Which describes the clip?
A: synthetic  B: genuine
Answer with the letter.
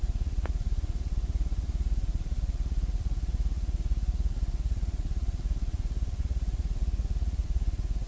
A